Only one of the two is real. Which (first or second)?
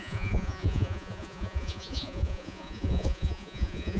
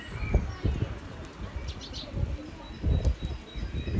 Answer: second